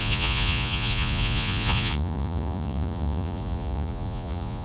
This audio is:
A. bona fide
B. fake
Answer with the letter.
B